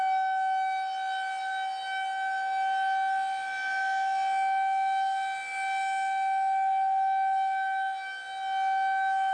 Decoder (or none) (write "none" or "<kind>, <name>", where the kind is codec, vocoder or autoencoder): none